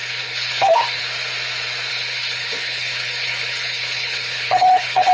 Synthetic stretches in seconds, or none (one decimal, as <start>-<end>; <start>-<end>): 0.0-1.0; 1.9-5.1